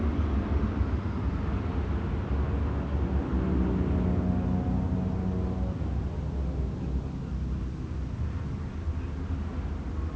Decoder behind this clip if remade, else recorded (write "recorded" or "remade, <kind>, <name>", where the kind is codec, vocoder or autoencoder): recorded